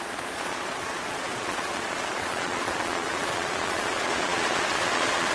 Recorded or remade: remade